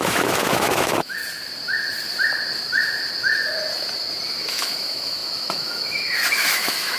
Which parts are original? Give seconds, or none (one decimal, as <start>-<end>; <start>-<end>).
1.2-4.4